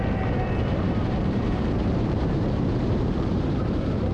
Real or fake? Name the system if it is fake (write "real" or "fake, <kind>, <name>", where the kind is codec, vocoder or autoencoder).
fake, vocoder, BigVGAN v2